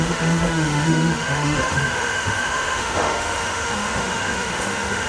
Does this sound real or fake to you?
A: fake